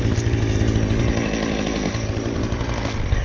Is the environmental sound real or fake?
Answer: real